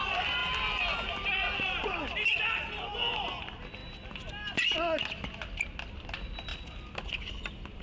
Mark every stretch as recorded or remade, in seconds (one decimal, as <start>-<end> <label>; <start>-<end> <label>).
0.0-7.8 recorded